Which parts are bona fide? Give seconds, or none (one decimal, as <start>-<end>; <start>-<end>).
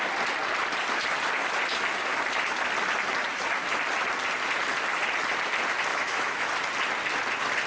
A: 0.0-5.9; 6.5-7.7